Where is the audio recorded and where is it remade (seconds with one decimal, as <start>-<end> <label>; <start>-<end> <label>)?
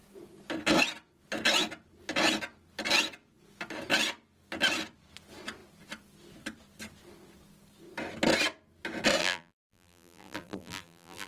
0.0-9.2 recorded; 9.2-11.3 remade